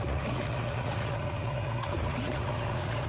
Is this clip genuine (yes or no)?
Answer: no